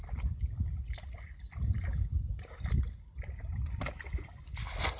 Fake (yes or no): no